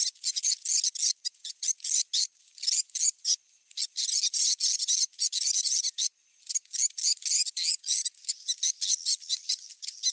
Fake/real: real